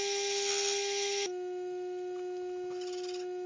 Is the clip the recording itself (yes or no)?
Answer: yes